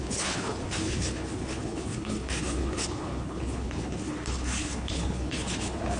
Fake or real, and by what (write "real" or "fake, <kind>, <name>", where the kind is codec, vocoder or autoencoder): fake, codec, HILCodec